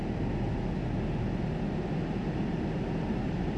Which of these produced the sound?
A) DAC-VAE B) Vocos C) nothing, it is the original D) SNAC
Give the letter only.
C